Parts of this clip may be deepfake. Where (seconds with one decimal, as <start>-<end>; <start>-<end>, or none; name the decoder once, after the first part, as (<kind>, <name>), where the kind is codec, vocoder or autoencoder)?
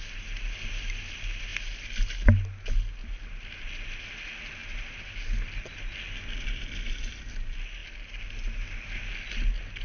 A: 3.0-3.7 (vocoder, BigVGAN v2); 4.6-7.3